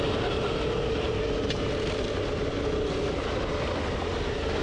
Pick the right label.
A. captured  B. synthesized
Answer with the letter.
A